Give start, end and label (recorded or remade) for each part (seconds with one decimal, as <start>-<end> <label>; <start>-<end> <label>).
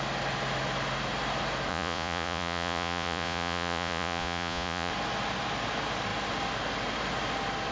0.0-1.7 recorded; 1.7-4.9 remade; 4.9-7.7 recorded